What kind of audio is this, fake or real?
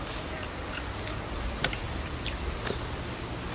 real